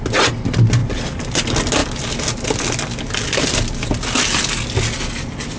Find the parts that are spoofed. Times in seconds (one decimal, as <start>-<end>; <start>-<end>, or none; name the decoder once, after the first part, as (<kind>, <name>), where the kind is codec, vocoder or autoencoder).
none